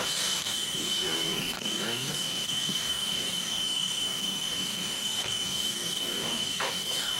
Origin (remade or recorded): remade